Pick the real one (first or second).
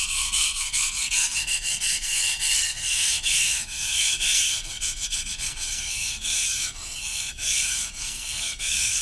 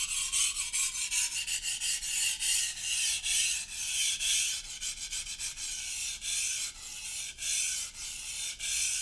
second